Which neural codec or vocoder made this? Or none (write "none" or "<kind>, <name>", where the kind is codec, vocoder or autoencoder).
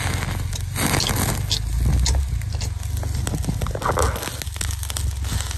none